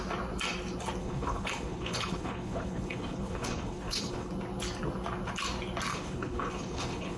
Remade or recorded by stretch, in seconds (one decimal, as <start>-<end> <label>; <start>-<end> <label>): 0.0-1.0 recorded; 1.0-4.3 remade; 4.3-5.9 recorded; 5.9-7.2 remade